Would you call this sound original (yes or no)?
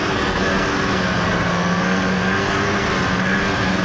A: no